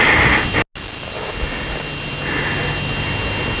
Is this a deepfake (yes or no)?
no